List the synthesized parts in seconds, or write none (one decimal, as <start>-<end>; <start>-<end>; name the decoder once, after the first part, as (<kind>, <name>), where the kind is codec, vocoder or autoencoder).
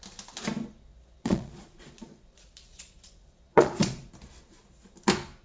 0.9-4.1 (vocoder, Vocos)